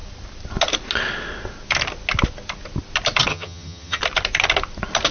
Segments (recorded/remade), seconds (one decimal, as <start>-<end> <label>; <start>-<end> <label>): 0.0-3.3 recorded; 3.3-4.0 remade; 4.0-5.1 recorded